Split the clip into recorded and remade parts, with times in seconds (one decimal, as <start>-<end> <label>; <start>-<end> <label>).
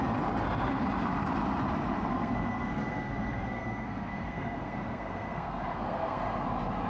0.0-2.1 recorded; 2.1-6.2 remade; 6.2-6.9 recorded